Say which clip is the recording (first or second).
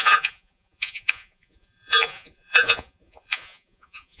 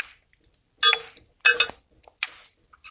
second